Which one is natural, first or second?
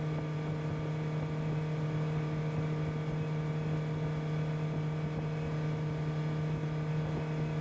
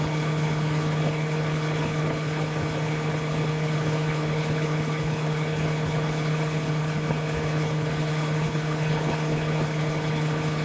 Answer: first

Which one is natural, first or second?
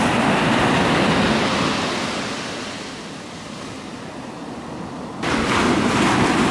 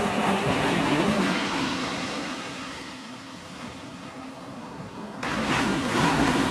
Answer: first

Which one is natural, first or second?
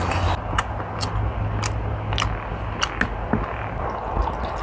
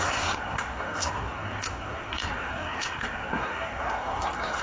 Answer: first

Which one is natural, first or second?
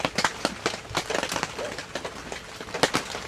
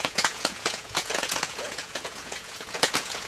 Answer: first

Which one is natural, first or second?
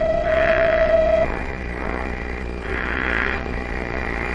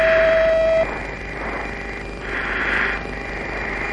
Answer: second